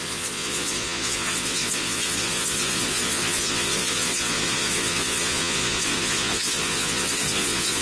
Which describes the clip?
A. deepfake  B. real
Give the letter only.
A